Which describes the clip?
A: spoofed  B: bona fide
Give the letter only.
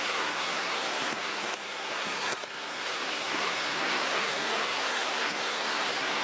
A